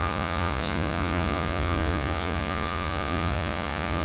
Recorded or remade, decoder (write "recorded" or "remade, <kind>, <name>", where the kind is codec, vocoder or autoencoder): remade, vocoder, Vocos